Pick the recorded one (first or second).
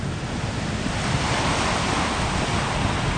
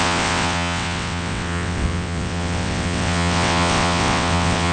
first